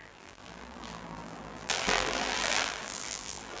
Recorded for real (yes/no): no